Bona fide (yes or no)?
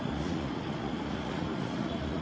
no